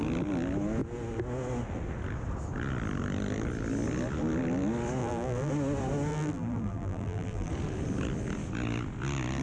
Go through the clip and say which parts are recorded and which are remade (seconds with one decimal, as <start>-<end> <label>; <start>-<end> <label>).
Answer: 0.0-5.0 recorded; 5.0-5.5 remade; 5.5-6.1 recorded; 6.1-7.5 remade; 7.5-9.4 recorded